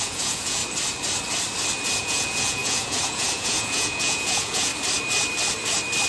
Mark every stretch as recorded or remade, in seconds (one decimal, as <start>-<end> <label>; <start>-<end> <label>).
0.0-0.6 remade; 0.6-2.0 recorded; 2.0-4.7 remade; 4.7-6.1 recorded